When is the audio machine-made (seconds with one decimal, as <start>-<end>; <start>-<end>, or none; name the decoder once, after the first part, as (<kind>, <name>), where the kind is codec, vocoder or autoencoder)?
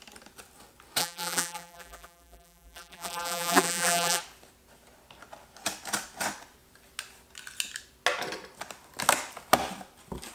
1.0-4.2 (vocoder, BigVGAN v2)